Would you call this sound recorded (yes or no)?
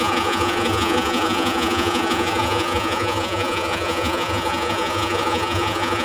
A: no